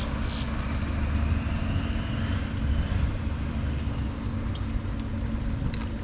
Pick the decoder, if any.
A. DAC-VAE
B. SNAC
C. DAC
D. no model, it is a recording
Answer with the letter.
D